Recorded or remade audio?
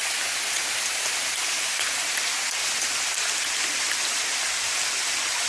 recorded